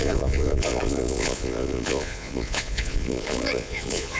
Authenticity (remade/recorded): remade